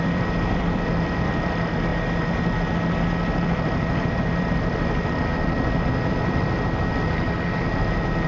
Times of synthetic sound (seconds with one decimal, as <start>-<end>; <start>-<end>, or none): 0.0-1.9; 3.1-8.3

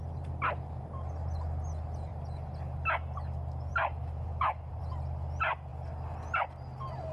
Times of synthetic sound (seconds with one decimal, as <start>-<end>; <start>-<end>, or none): 4.3-4.8